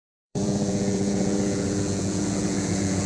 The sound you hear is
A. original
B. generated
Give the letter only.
B